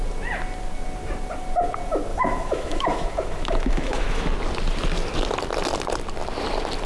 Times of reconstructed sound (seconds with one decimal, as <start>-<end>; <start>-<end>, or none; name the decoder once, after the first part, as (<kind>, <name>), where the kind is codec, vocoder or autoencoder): 2.1-4.3 (autoencoder, DAC-VAE)